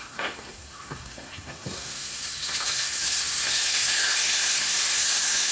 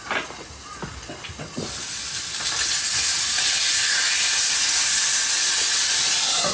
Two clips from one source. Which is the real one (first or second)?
second